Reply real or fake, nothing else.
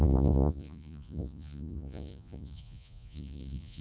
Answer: fake